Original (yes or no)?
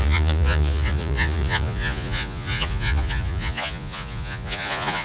no